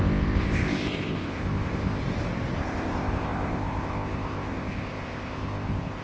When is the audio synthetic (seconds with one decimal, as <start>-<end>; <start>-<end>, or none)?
0.0-2.0; 2.6-6.0